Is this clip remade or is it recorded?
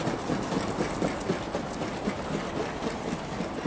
recorded